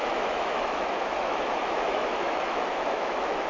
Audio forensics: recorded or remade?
remade